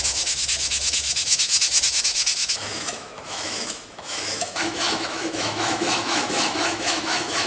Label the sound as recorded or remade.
remade